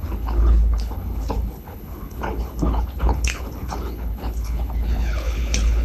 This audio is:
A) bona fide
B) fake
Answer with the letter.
B